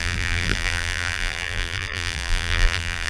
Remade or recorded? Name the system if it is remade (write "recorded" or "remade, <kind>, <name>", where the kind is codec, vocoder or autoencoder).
remade, vocoder, BigVGAN v2